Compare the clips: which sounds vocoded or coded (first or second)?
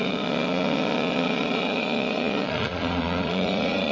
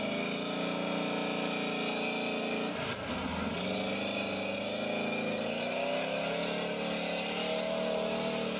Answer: first